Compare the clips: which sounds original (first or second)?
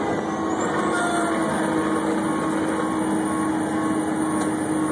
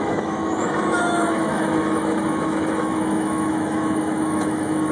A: first